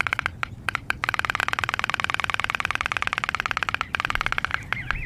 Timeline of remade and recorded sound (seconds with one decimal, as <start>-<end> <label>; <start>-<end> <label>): 0.0-5.1 recorded